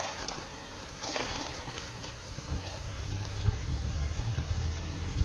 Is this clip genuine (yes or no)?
no